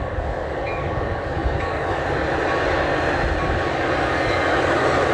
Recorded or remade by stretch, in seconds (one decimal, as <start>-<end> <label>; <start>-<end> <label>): 0.0-2.3 remade; 2.3-3.7 recorded; 3.7-5.1 remade